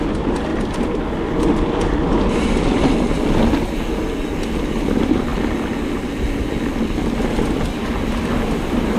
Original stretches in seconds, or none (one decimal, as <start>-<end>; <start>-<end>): 0.0-0.5; 1.0-9.0